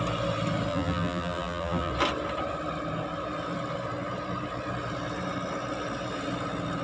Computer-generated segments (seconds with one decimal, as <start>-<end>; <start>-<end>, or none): 0.7-1.9